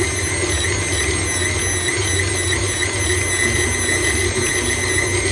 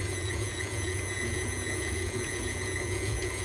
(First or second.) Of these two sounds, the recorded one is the first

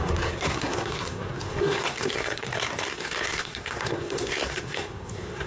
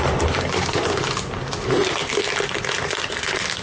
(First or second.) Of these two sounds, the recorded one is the second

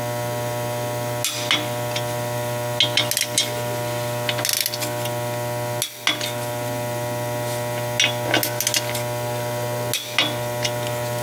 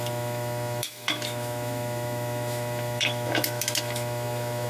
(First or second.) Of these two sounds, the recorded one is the first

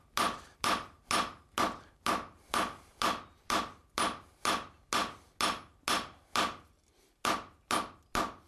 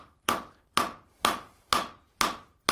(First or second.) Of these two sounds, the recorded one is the first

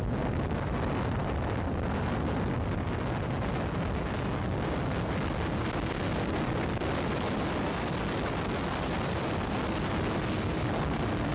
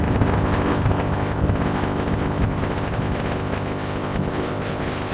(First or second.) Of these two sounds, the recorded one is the first